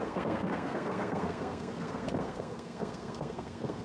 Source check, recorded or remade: remade